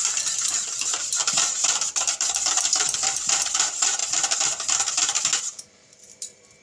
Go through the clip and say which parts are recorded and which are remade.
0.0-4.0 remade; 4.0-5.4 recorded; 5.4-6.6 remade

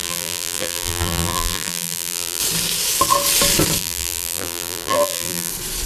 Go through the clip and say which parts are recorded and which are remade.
0.0-2.4 remade; 2.4-3.8 recorded; 3.8-5.5 remade; 5.5-5.9 recorded